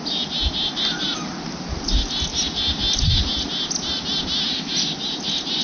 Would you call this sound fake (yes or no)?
no